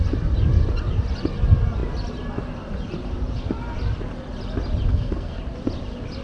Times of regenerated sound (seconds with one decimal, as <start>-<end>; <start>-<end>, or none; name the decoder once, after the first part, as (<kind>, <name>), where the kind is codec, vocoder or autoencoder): 4.9-5.4 (codec, SNAC)